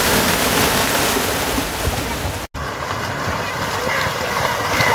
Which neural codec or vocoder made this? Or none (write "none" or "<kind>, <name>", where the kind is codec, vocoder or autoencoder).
none